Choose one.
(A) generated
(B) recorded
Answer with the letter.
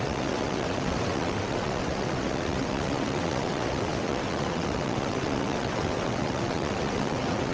A